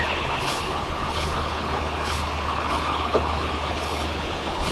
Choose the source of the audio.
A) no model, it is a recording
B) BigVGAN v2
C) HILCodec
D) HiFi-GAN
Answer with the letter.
C